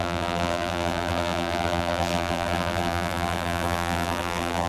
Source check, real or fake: fake